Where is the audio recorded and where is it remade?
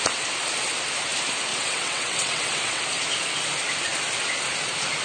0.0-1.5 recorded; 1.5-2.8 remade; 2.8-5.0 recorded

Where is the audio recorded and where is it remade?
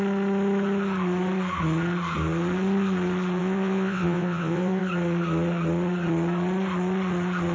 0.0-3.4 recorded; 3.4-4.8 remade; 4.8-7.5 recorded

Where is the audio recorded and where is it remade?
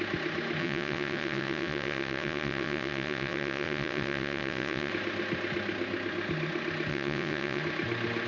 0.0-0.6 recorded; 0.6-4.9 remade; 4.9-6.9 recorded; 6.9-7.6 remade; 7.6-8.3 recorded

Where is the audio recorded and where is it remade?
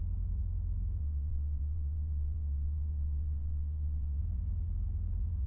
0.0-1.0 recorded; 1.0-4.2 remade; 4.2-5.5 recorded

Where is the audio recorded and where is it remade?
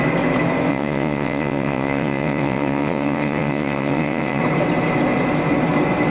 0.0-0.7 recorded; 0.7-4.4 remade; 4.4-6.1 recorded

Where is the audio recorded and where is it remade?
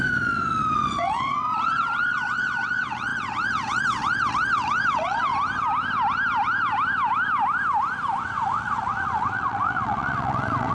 0.0-5.3 remade; 5.3-8.2 recorded; 8.2-10.7 remade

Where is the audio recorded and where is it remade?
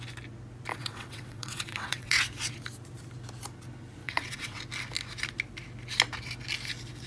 0.0-0.7 recorded; 0.7-2.2 remade; 2.2-4.0 recorded; 4.0-4.6 remade; 4.6-7.1 recorded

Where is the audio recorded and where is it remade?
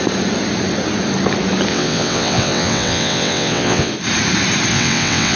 0.0-1.7 recorded; 1.7-3.9 remade; 3.9-4.7 recorded; 4.7-5.4 remade